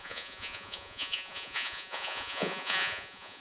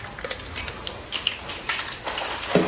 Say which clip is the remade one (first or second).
first